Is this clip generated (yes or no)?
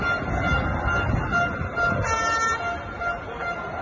no